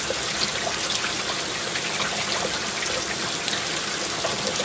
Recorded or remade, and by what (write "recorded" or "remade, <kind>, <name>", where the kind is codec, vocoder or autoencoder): recorded